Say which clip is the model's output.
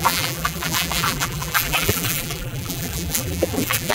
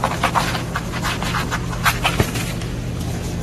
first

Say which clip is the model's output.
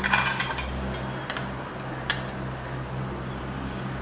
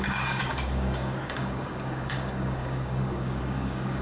second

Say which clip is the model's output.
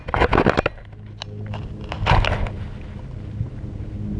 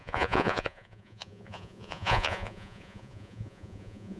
second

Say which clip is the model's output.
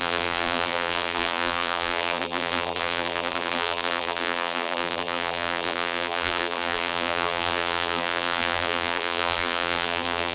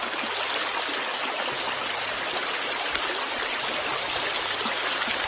first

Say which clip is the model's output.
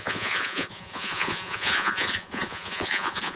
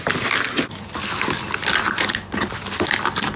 first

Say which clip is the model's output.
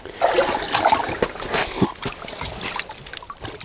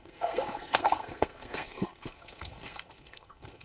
second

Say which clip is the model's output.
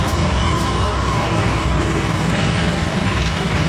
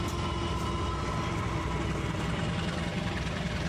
first